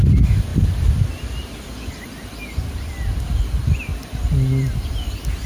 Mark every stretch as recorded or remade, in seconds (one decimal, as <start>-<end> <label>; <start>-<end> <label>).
0.0-5.5 recorded